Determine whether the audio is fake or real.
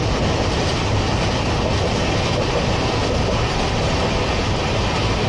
real